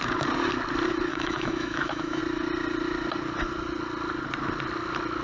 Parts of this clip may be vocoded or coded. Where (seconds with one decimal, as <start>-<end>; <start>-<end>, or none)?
1.1-2.2